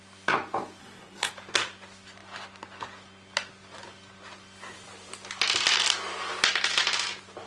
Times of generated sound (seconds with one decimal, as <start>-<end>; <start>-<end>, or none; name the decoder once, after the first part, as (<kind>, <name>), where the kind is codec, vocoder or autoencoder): 0.8-1.3 (codec, SNAC)